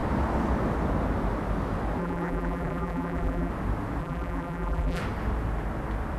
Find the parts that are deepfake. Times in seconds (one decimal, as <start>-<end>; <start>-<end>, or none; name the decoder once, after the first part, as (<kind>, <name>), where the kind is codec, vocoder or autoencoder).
2.0-3.5 (vocoder, BigVGAN v2); 4.0-5.0